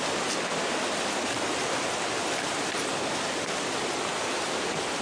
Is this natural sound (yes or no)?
yes